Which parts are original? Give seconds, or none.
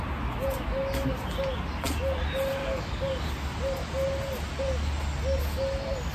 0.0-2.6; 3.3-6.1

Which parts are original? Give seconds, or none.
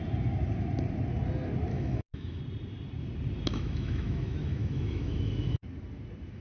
0.0-1.7; 2.4-3.5; 5.6-6.4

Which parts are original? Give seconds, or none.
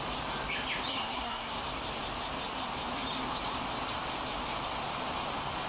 0.0-0.9; 1.6-5.7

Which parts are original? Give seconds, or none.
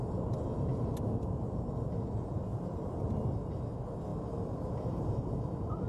0.0-2.5; 3.1-4.1; 5.2-5.9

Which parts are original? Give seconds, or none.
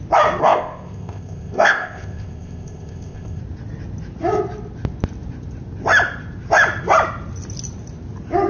0.0-0.4; 3.4-8.5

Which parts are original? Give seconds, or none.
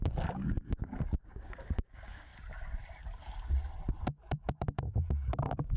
2.3-4.0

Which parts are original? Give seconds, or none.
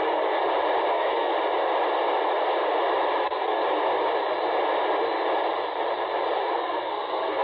0.4-0.9; 1.3-3.2; 3.6-6.4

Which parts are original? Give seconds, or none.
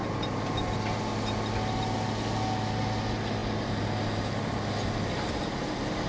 0.0-6.1